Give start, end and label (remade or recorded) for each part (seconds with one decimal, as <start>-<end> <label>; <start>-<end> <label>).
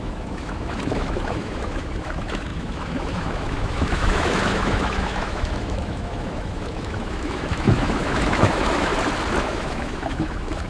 0.0-8.9 remade; 8.9-9.4 recorded; 9.4-10.7 remade